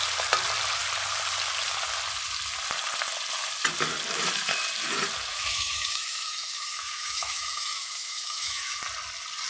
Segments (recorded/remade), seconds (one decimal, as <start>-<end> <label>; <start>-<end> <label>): 0.0-5.3 recorded; 5.3-8.8 remade; 8.8-9.5 recorded